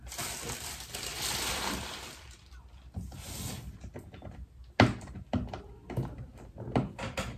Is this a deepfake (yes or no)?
no